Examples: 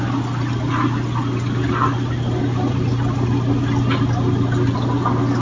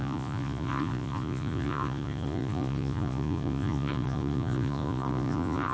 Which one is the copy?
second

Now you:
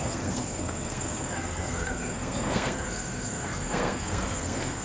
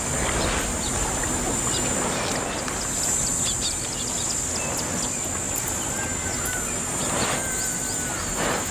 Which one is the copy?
first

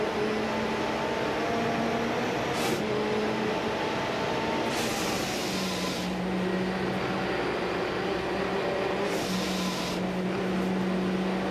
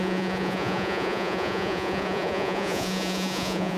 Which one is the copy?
second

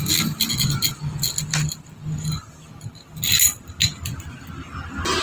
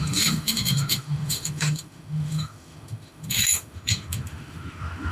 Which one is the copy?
second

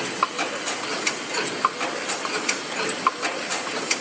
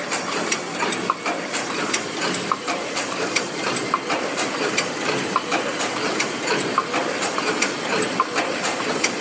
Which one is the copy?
second